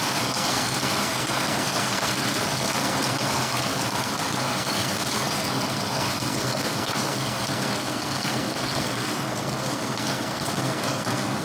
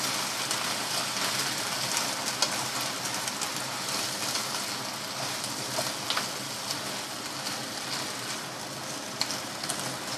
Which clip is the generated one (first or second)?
first